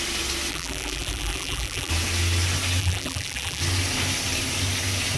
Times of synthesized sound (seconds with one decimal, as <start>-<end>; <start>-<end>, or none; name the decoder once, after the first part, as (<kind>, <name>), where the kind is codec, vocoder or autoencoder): 0.5-1.9 (vocoder, BigVGAN v2); 2.8-3.6